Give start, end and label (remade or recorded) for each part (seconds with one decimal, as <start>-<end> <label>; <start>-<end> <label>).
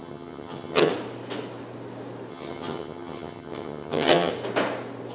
0.0-0.9 remade; 0.9-2.3 recorded; 2.3-4.3 remade; 4.3-5.1 recorded